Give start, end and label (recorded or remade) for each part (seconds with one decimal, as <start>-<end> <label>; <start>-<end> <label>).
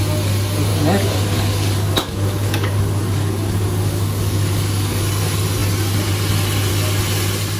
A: 0.0-0.7 recorded; 0.7-5.0 remade; 5.0-7.6 recorded